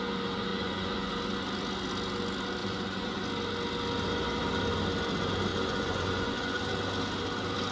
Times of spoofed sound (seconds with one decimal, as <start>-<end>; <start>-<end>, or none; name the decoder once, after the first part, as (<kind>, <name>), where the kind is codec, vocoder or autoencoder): 0.5-1.1 (vocoder, Vocos); 2.6-3.2; 5.5-6.6